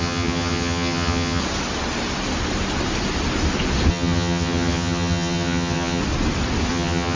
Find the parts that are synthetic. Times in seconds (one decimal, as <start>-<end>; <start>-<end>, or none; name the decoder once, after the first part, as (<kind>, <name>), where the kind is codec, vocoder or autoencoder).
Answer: 0.0-1.4 (vocoder, HiFi-GAN); 3.9-6.0; 6.7-7.2